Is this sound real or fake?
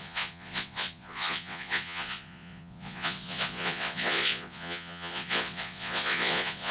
fake